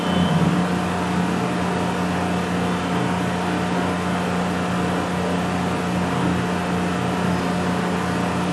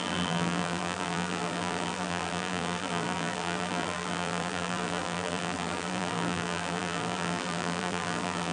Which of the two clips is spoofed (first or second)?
second